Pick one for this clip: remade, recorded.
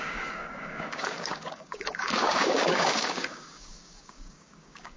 remade